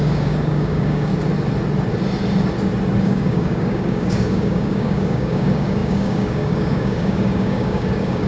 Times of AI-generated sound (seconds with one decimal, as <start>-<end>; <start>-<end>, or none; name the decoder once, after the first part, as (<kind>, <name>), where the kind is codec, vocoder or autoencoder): 0.0-1.1 (codec, DAC); 3.0-8.3